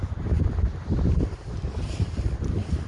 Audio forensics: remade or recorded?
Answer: recorded